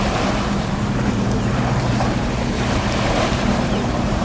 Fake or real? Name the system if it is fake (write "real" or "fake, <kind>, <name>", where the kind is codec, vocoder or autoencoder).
fake, vocoder, BigVGAN v2